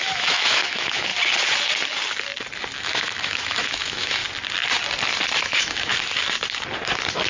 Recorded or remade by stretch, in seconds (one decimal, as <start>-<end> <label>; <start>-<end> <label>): 0.0-1.1 remade; 1.1-2.8 recorded; 2.8-4.2 remade; 4.2-5.4 recorded; 5.4-5.9 remade; 5.9-7.3 recorded